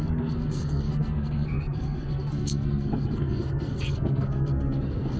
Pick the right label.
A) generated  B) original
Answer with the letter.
A